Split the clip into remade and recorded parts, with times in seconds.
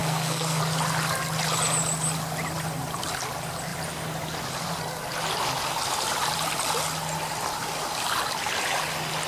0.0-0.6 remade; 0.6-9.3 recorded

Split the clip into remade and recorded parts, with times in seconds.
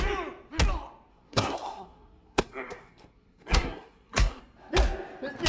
0.0-1.1 recorded; 1.1-4.4 remade; 4.4-5.5 recorded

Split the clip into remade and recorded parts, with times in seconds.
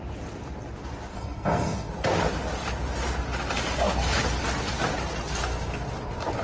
0.0-1.1 recorded; 1.1-1.9 remade; 1.9-6.4 recorded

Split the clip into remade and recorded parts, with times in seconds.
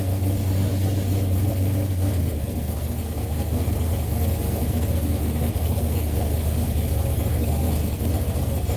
0.0-8.8 remade